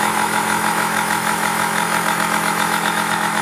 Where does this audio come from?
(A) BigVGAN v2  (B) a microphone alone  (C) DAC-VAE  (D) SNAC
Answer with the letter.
C